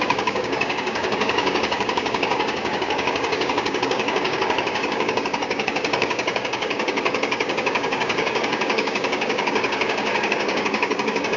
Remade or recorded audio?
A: remade